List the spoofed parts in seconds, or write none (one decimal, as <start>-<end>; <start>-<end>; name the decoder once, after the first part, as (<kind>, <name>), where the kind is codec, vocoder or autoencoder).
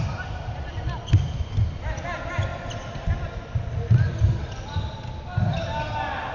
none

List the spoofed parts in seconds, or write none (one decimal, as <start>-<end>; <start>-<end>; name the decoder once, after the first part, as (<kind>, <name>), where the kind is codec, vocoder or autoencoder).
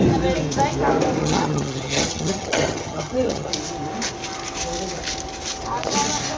1.2-3.5 (vocoder, HiFi-GAN)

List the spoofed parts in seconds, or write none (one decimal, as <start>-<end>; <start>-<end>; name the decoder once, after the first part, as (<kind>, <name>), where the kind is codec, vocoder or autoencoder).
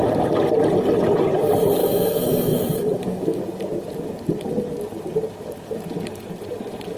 1.8-3.4 (autoencoder, DAC-VAE)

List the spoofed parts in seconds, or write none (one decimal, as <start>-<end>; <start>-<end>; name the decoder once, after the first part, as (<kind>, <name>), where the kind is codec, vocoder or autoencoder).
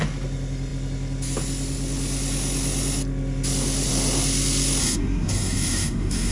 4.8-6.3 (codec, SNAC)